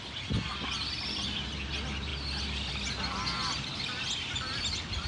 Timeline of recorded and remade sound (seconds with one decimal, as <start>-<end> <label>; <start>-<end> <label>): 0.0-5.1 recorded